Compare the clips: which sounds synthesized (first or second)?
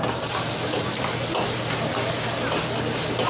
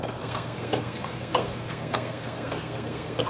second